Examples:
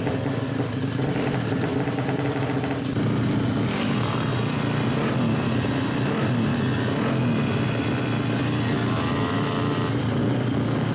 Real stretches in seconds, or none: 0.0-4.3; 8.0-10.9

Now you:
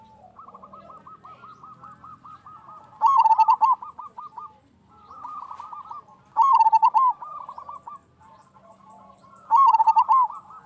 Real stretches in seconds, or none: 0.0-10.7

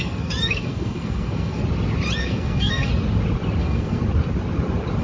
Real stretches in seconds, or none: 1.6-2.2; 2.9-3.6; 4.0-5.0

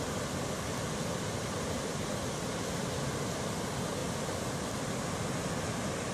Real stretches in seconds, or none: 0.0-4.0; 4.6-6.1

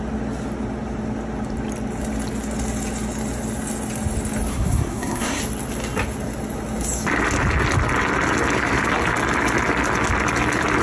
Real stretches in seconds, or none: 0.0-4.5; 5.4-10.8

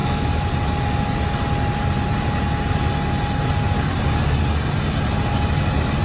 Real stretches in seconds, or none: 0.5-6.0